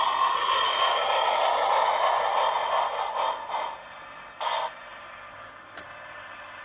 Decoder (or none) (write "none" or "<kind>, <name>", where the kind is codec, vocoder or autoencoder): none